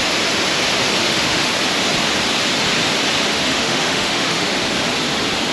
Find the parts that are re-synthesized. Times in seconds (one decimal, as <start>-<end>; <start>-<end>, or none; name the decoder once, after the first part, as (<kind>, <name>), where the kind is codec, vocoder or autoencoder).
1.0-1.5 (autoencoder, DAC-VAE); 3.3-4.6